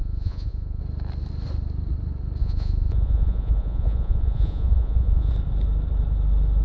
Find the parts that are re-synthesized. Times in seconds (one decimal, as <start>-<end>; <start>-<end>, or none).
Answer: 0.0-0.8; 2.4-5.3